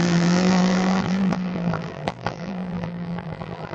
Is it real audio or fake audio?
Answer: fake